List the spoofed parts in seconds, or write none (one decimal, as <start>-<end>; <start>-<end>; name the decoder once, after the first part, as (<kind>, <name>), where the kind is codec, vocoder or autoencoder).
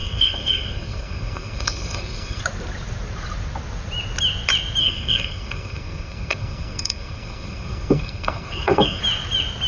0.0-2.4 (codec, SNAC); 4.8-9.0